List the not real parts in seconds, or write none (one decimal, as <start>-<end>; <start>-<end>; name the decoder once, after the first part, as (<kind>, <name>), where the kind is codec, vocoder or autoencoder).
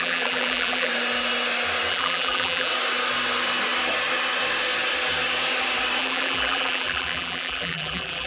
0.0-0.9 (vocoder, BigVGAN v2); 1.9-2.7; 6.0-8.3